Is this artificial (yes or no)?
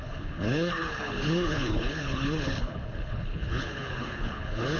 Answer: yes